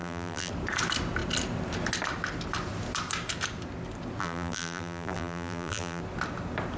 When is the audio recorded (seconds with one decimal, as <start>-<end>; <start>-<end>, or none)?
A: 0.5-4.2; 6.0-6.8